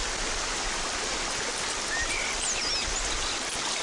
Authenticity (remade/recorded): recorded